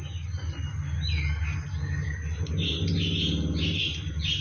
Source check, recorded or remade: recorded